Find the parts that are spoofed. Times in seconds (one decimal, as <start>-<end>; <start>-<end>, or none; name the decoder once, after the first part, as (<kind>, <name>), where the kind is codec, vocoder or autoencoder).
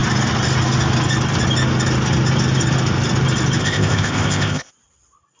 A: 3.6-4.7 (codec, ZipCodec)